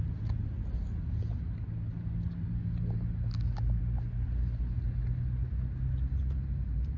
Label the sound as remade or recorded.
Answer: recorded